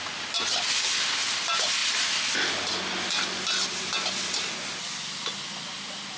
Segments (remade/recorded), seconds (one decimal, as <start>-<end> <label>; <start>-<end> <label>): 0.0-6.2 recorded